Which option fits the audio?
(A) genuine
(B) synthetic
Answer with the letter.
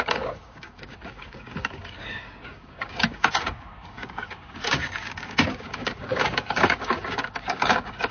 B